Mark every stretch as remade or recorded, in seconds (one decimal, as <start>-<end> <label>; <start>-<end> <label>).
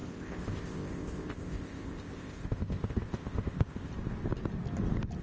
0.0-3.9 remade; 3.9-5.2 recorded